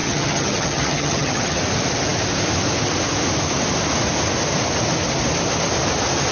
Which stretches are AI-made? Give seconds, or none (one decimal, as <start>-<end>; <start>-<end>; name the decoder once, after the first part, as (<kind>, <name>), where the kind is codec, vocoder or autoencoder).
0.0-1.6 (vocoder, HiFi-GAN)